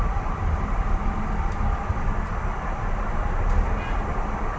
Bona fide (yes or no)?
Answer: yes